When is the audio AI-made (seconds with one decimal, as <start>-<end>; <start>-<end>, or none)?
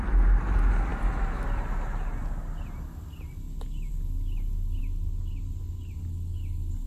none